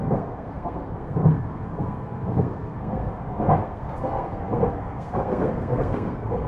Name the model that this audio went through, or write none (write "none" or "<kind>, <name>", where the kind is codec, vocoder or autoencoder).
codec, SNAC